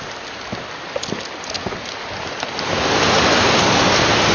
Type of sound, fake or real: real